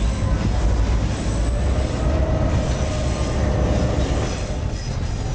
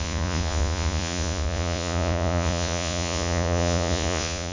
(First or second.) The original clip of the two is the first